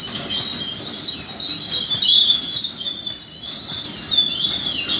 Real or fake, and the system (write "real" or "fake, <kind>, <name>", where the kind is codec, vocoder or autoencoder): real